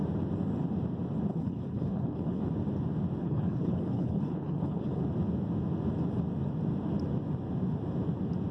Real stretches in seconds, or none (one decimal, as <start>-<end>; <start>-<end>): 0.0-1.3; 2.4-3.2; 5.0-8.5